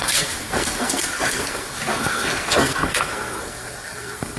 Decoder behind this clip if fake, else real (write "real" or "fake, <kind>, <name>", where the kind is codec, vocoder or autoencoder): fake, codec, SNAC